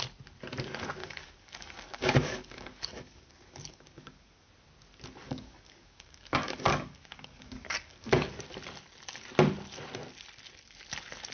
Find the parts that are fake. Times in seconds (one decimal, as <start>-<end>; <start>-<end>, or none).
1.0-4.5; 5.2-8.3